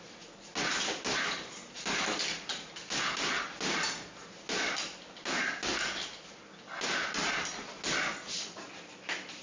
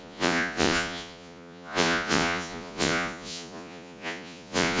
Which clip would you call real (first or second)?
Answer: first